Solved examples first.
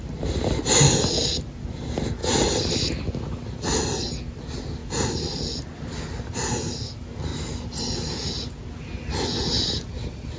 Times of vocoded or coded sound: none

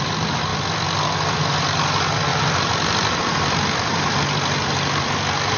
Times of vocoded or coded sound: none

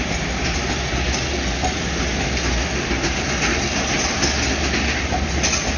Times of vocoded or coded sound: none